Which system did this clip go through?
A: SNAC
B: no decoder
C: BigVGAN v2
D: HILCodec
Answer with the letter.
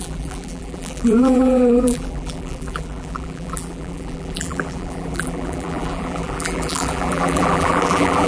C